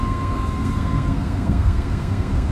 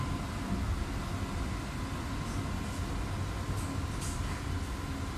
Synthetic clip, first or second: first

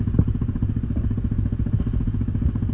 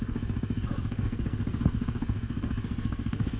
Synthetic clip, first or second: second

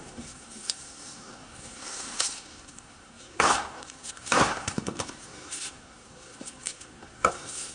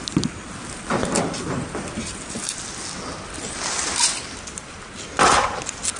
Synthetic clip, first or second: first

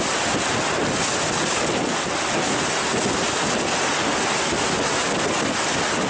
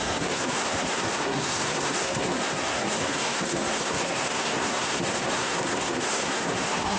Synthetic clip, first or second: second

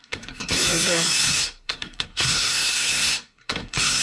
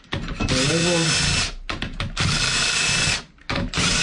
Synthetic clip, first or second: first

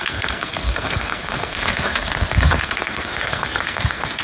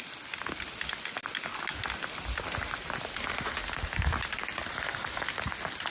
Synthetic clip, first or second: first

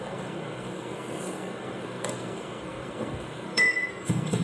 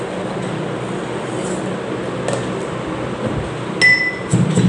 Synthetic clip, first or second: first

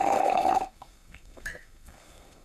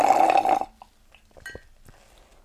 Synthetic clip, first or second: first